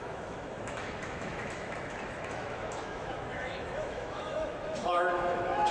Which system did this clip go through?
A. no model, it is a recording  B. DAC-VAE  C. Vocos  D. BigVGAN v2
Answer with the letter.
B